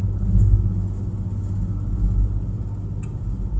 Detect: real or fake real